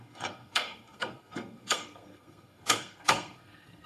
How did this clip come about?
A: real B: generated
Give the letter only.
B